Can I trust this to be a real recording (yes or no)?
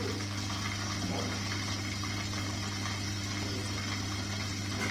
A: yes